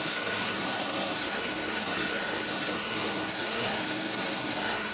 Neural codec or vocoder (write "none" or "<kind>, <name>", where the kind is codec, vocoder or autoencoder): codec, SNAC